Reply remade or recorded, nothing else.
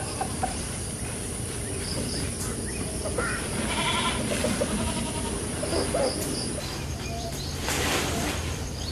remade